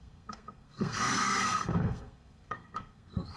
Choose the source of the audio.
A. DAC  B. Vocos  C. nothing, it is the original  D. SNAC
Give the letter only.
D